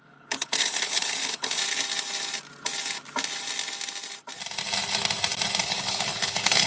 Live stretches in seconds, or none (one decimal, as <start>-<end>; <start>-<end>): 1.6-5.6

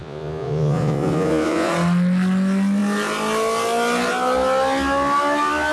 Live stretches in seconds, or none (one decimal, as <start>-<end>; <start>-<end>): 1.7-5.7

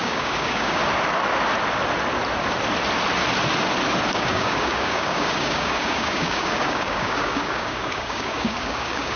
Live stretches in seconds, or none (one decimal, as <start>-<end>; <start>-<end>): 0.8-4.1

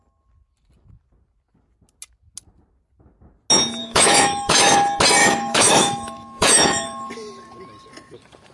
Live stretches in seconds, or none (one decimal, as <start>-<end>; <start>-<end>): 0.0-3.8; 4.7-5.2; 7.1-8.5

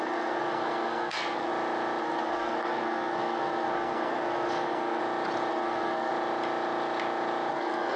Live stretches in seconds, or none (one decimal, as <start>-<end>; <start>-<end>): 1.5-2.0; 5.0-5.5; 6.1-7.5

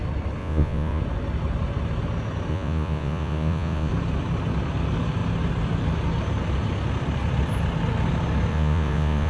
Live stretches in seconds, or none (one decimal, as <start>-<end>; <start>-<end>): 0.0-0.4; 1.0-2.5; 3.9-8.5